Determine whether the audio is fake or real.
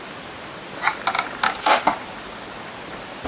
real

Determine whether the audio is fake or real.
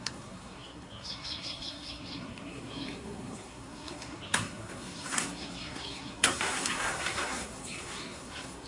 fake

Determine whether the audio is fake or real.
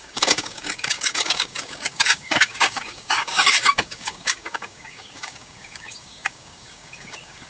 fake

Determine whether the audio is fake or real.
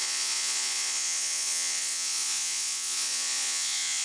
fake